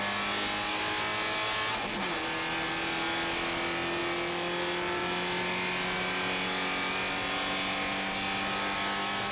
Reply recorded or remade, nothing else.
recorded